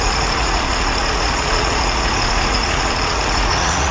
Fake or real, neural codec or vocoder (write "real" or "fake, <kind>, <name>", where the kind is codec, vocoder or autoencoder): fake, vocoder, Vocos